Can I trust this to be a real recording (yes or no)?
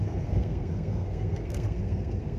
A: no